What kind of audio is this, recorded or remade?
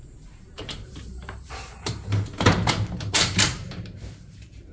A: remade